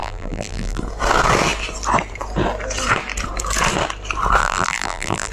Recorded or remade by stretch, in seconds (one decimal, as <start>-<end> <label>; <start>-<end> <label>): 0.0-0.8 remade; 0.8-4.4 recorded; 4.4-5.3 remade